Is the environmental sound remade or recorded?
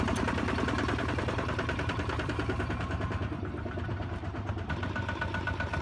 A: remade